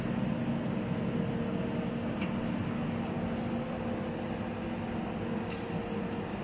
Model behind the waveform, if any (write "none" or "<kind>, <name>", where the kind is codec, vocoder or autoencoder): none